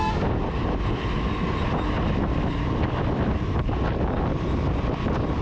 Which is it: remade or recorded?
recorded